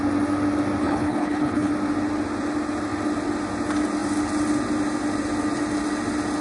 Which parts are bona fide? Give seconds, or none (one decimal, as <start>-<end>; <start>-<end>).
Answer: 0.0-0.8; 1.7-6.4